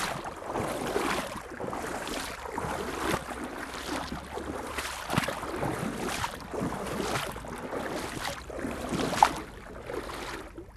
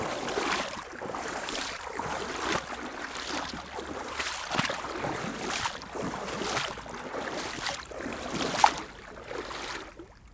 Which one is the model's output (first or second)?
second